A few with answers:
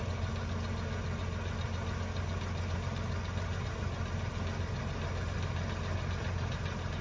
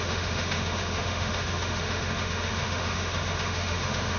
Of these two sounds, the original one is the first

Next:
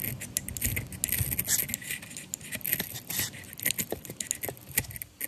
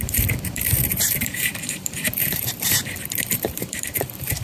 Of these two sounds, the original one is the first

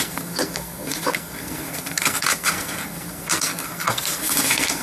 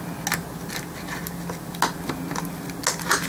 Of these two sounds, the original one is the second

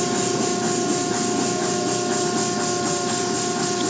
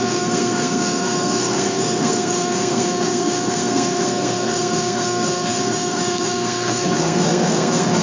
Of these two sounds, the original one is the first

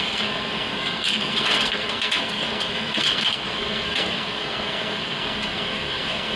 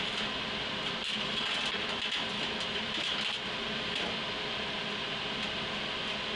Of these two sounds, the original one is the second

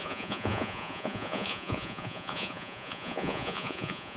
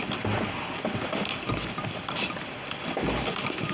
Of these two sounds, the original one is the second